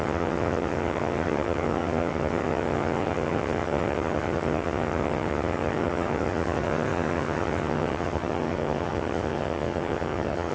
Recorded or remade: remade